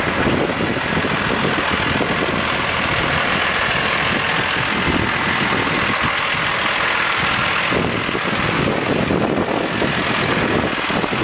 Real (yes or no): yes